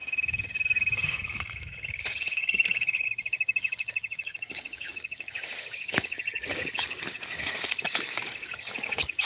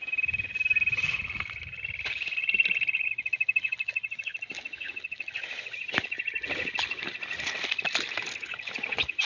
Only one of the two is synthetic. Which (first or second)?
first